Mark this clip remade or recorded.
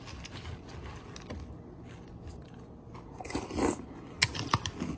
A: recorded